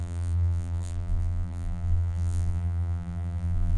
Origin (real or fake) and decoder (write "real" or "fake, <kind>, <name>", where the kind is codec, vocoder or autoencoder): fake, vocoder, BigVGAN v2